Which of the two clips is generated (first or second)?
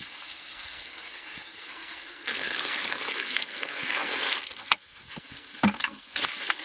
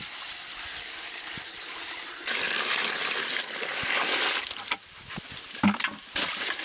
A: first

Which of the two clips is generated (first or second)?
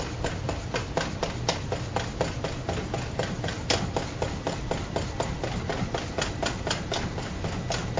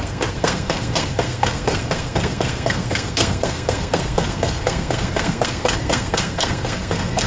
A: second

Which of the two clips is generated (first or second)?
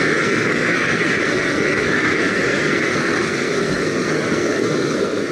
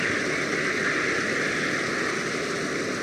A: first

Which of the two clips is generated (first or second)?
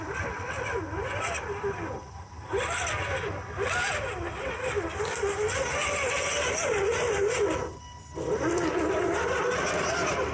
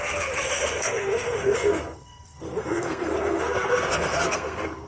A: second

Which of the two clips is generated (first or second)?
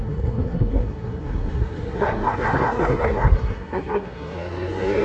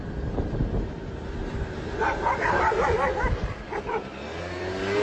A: first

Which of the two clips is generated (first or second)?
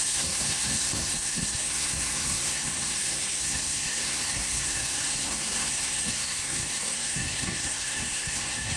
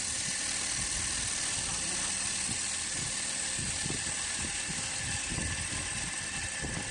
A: first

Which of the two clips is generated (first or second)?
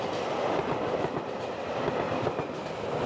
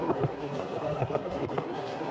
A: second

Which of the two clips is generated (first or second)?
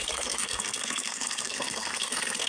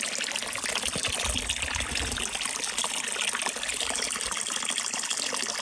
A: first